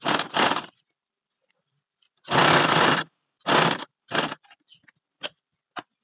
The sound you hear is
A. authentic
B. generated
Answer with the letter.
A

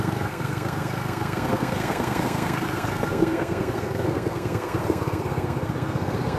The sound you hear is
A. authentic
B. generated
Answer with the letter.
B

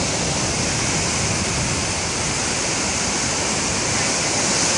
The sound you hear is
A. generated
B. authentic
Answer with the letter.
B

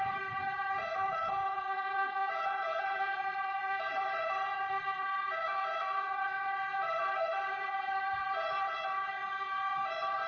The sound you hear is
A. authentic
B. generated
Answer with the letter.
B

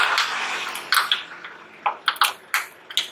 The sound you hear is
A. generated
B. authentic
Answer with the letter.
B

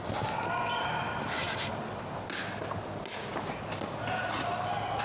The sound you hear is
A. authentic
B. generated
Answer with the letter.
A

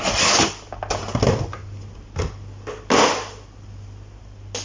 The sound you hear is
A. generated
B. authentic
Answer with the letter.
B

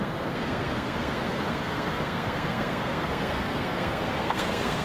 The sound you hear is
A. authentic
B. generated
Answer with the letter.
B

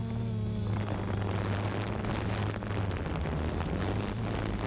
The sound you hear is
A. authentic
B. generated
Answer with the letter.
A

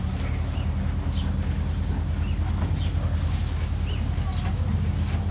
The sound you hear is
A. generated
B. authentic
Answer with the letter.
B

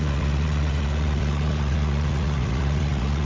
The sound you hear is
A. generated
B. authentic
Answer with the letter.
A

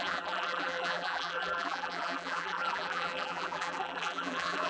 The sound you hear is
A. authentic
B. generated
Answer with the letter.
B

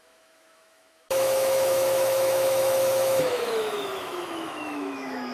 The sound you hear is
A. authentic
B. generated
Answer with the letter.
B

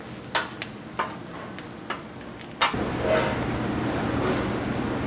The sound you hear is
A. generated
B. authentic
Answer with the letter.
B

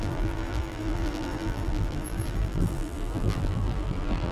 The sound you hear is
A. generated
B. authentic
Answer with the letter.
A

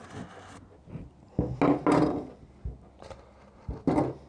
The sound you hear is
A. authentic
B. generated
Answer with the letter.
A